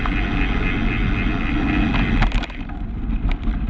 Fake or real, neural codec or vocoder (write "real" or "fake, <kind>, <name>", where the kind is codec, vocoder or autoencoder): real